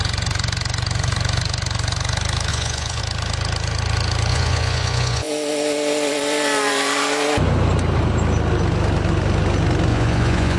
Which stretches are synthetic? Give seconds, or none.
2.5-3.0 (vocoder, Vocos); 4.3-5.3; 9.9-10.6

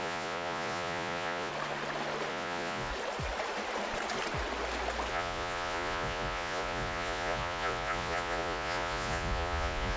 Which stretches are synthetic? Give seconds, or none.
0.0-1.5 (vocoder, Vocos); 2.3-2.9; 5.1-10.0

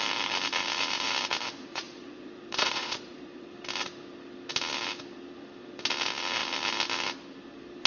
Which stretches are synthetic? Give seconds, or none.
1.7-3.5 (vocoder, Vocos)